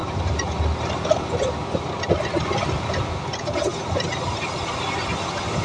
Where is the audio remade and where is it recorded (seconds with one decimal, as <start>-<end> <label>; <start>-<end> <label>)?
0.0-5.6 recorded